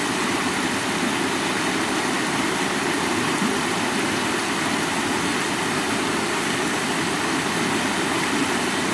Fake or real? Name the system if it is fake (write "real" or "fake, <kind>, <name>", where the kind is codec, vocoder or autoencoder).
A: real